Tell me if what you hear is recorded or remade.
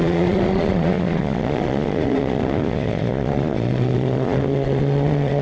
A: remade